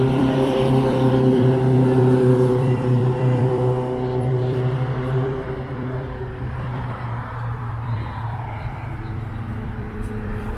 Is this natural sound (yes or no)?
no